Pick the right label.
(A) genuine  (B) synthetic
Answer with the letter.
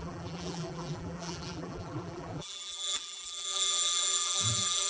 B